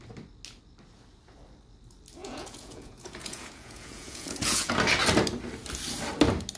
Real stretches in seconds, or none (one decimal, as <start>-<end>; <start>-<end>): 0.0-2.2; 4.7-6.6